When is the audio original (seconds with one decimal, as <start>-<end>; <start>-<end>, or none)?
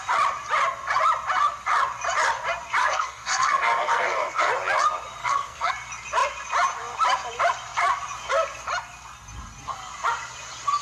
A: 0.0-2.8; 4.5-5.2; 5.7-10.8